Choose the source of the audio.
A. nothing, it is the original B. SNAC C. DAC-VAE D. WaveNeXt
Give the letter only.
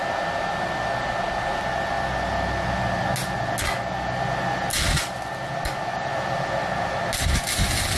A